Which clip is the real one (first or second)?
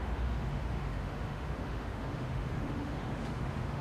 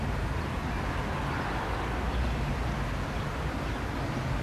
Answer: second